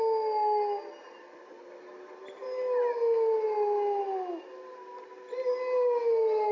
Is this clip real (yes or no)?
yes